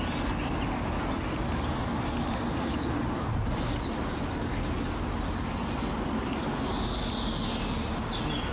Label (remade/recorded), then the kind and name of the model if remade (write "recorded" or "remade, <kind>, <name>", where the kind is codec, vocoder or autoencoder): recorded